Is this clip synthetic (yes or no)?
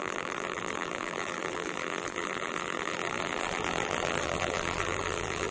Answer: yes